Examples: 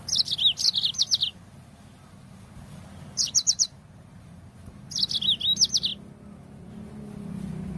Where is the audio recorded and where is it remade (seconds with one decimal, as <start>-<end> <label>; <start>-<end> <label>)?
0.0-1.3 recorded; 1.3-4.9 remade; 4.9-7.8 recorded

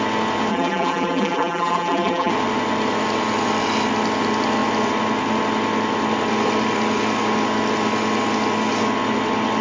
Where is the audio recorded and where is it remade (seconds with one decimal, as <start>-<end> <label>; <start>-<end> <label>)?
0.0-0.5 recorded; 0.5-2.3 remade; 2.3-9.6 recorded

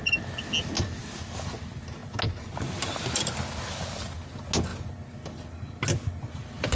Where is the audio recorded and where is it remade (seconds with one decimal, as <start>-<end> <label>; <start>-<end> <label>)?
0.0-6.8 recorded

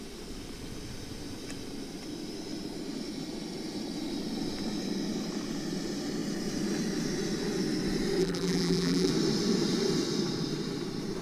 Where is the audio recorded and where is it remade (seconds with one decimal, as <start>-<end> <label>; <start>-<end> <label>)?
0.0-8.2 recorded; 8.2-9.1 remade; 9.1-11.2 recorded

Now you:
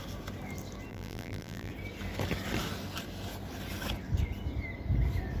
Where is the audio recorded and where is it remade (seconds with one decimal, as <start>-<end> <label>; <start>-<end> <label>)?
0.0-0.9 recorded; 0.9-1.7 remade; 1.7-5.4 recorded